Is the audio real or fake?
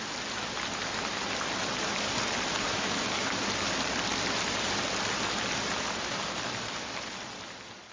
real